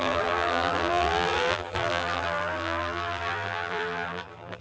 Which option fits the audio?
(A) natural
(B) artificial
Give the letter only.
B